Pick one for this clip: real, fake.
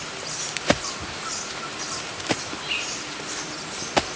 fake